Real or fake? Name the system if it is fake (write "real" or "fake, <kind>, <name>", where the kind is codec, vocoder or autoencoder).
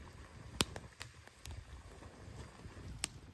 real